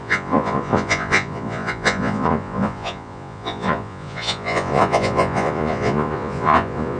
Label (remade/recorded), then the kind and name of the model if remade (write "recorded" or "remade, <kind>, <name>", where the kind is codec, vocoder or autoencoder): remade, vocoder, Vocos